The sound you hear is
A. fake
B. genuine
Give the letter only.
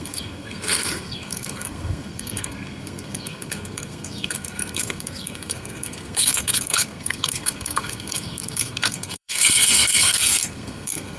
A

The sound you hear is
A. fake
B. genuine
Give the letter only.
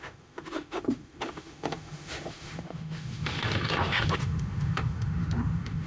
A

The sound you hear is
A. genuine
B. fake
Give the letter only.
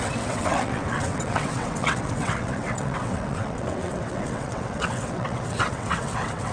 B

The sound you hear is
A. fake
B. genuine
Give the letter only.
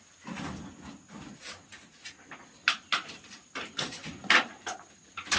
B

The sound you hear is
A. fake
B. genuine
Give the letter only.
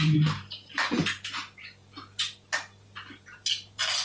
A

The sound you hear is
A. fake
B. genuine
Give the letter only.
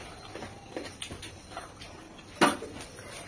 B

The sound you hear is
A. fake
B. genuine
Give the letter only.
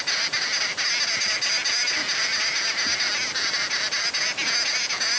B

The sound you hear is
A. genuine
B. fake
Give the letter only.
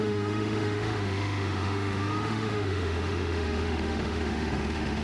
B